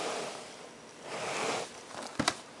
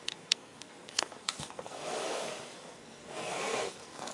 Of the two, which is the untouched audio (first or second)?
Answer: first